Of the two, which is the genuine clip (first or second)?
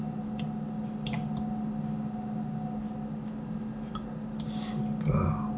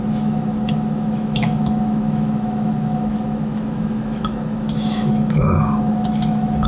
first